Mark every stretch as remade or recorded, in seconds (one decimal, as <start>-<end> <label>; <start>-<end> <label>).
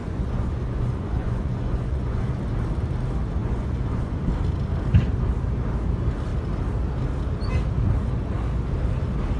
0.0-2.4 remade; 2.4-3.4 recorded; 3.4-4.3 remade; 4.3-9.4 recorded